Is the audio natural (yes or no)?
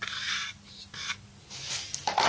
yes